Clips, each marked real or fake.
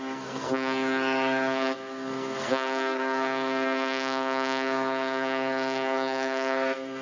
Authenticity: fake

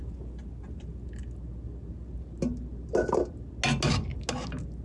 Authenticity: real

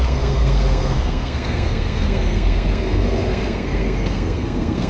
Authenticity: fake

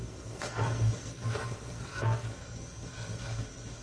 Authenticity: fake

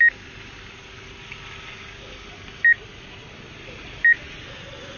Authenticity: real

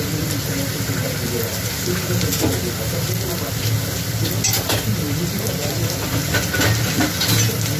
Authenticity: real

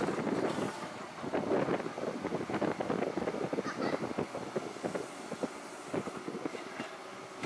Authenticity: real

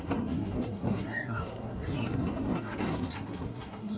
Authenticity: fake